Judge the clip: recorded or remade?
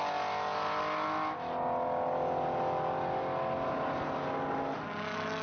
recorded